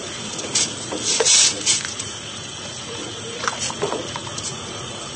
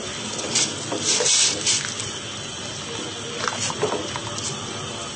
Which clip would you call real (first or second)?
second